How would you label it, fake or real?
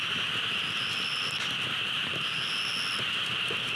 real